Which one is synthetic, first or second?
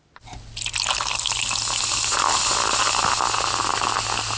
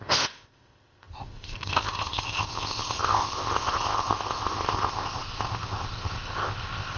second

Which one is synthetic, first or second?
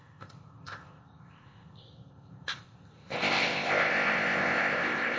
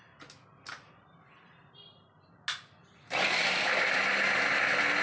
first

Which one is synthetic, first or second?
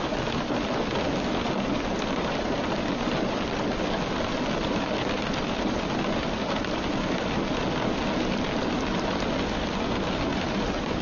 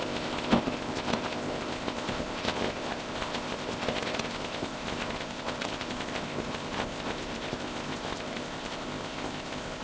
second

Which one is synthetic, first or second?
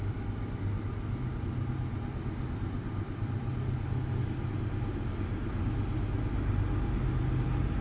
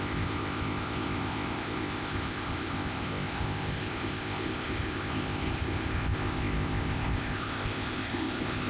second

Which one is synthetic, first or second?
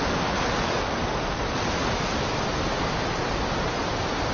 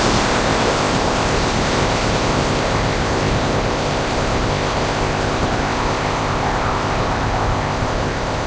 second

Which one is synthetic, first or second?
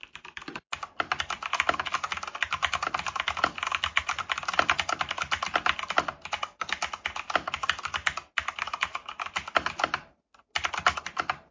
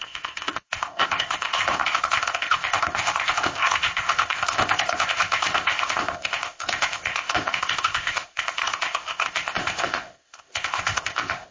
second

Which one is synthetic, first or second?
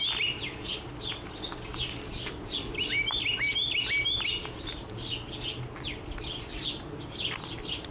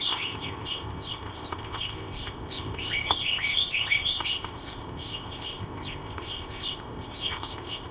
second